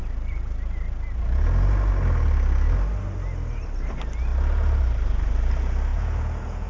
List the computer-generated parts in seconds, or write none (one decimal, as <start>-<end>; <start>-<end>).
5.9-6.7